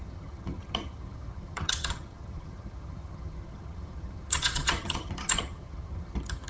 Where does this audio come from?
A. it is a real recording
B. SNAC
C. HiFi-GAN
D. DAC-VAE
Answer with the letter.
C